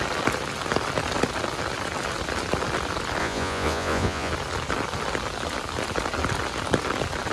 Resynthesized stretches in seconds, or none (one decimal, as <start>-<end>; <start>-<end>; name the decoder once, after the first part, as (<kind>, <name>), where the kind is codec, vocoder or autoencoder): 3.2-4.3 (vocoder, Vocos)